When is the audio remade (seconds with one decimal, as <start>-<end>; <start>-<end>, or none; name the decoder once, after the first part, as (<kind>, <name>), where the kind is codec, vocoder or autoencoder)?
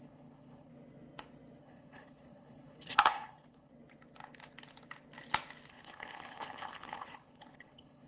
0.0-0.7 (codec, HILCodec); 1.6-3.7; 5.7-8.1